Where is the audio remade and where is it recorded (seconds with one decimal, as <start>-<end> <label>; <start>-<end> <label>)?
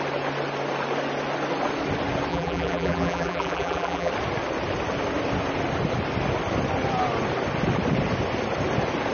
0.0-2.3 recorded; 2.3-4.1 remade; 4.1-9.1 recorded